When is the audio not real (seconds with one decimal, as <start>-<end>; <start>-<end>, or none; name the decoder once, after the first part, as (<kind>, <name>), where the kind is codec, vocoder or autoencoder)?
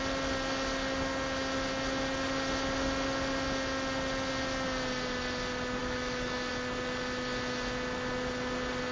5.8-6.5 (autoencoder, DAC-VAE)